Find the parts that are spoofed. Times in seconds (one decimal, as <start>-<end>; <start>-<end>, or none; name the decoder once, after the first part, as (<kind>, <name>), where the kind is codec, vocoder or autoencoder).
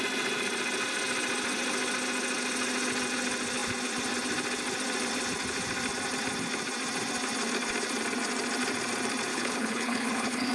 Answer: 9.3-10.5 (codec, HILCodec)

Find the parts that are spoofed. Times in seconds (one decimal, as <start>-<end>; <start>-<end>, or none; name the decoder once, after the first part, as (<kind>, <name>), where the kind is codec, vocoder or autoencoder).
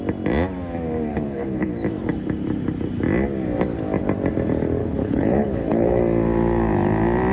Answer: 1.1-1.7 (codec, HILCodec); 4.8-6.0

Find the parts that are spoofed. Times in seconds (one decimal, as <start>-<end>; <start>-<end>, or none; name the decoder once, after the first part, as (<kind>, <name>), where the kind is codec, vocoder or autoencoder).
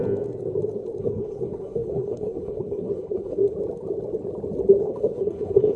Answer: 1.0-3.4 (codec, HILCodec); 4.8-5.8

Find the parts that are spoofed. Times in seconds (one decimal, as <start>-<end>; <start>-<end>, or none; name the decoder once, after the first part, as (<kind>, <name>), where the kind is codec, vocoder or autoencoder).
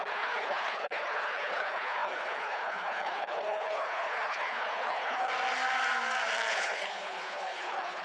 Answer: 0.0-5.3 (codec, HILCodec); 6.5-8.0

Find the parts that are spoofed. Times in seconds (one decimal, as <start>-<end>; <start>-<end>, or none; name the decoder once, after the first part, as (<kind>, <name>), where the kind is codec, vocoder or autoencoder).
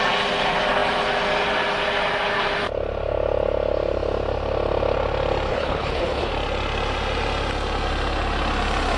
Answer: 5.5-6.3 (codec, HILCodec)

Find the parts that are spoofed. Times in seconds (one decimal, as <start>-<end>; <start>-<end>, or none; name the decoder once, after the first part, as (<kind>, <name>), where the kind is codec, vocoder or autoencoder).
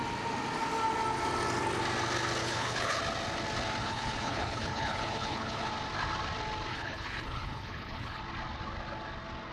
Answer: 2.4-3.0 (codec, HILCodec); 3.8-5.7; 6.7-8.2